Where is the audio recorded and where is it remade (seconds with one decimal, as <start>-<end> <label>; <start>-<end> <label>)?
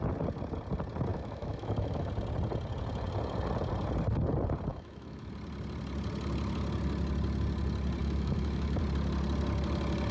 0.0-1.1 recorded; 1.1-2.1 remade; 2.1-4.7 recorded; 4.7-5.3 remade; 5.3-8.0 recorded; 8.0-8.8 remade; 8.8-10.1 recorded